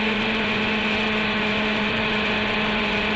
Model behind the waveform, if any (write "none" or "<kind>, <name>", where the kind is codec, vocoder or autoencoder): vocoder, Vocos